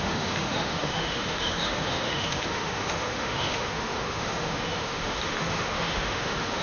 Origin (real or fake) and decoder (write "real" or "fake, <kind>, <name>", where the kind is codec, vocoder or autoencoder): fake, autoencoder, DAC-VAE